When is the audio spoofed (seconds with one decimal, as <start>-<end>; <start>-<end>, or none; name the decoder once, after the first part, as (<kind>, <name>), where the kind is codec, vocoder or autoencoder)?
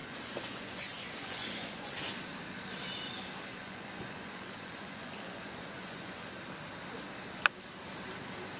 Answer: 0.0-1.9 (vocoder, Vocos); 3.5-6.3